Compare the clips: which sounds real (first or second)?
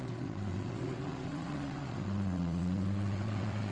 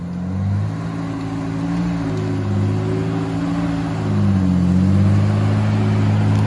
second